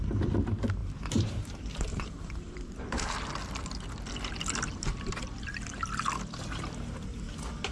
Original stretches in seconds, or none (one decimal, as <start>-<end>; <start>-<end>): 0.0-0.8; 3.3-7.7